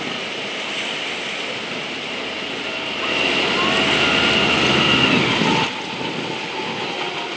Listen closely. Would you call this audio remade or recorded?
recorded